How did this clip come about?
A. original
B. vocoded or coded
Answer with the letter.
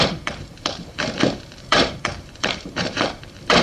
B